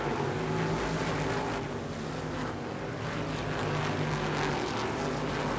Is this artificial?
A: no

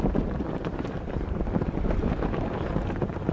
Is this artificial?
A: no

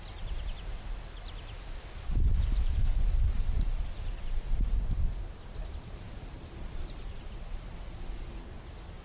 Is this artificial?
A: no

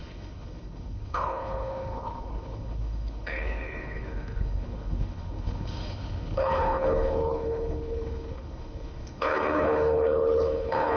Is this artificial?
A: yes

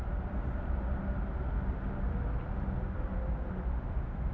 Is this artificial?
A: no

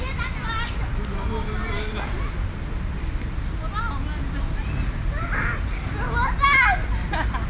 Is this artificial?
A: no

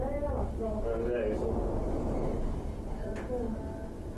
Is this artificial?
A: no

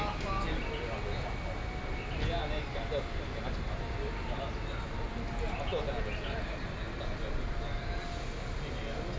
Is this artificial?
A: no